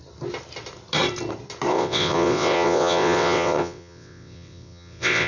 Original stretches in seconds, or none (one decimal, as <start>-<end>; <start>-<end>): 0.0-1.7